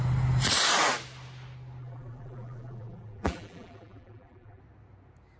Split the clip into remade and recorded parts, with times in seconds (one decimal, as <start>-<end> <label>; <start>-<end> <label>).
0.0-1.8 recorded; 1.8-4.6 remade; 4.6-5.4 recorded